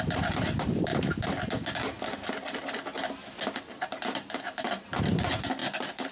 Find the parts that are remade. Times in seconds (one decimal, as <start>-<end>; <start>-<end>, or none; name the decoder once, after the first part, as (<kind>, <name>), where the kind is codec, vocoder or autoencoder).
0.0-0.9 (vocoder, BigVGAN v2); 3.6-6.1